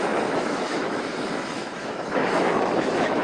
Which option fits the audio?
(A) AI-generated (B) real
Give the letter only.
A